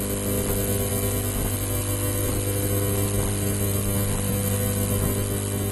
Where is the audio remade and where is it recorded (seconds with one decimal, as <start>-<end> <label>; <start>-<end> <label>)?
0.0-5.7 recorded